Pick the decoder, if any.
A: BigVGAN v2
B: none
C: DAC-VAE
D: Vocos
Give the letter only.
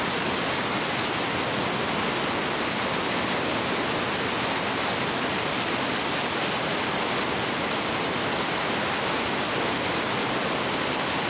B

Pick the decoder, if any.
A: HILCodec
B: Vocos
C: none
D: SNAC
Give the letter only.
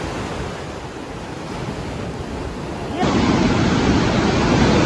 C